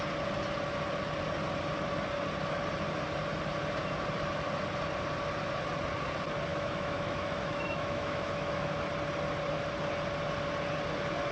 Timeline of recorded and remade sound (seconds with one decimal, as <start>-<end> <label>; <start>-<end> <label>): 0.0-6.5 recorded; 6.5-8.8 remade; 8.8-11.3 recorded

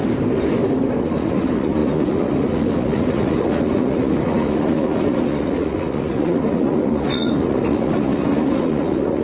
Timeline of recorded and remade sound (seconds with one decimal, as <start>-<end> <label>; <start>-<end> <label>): 0.0-1.0 recorded; 1.0-9.2 remade

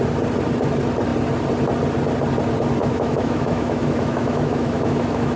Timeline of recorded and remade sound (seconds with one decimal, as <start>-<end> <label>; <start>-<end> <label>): 0.0-2.8 recorded; 2.8-5.4 remade